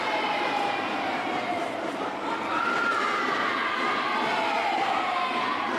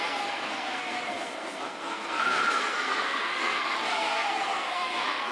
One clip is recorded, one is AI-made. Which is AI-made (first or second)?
second